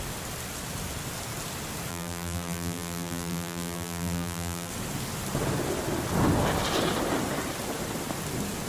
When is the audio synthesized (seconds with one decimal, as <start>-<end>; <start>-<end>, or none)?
1.9-4.7